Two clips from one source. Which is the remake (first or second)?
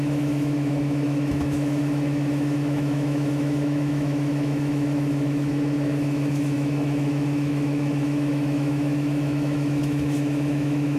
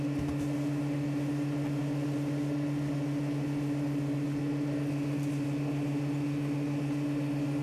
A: first